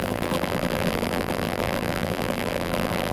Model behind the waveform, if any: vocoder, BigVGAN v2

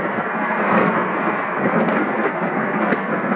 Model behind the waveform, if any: codec, SNAC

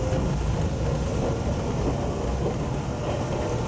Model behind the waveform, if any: none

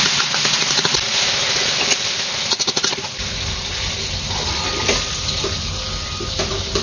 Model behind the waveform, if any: none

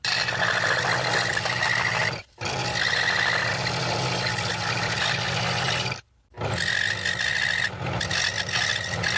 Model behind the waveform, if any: none